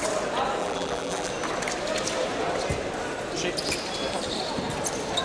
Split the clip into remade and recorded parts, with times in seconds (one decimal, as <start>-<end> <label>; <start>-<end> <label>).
0.0-0.6 recorded; 0.6-1.3 remade; 1.3-5.2 recorded